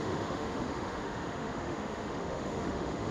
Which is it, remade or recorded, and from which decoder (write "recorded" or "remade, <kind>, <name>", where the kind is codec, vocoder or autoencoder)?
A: remade, autoencoder, DAC-VAE